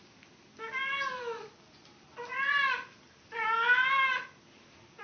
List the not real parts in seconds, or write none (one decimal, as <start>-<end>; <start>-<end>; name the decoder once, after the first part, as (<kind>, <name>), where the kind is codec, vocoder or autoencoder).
none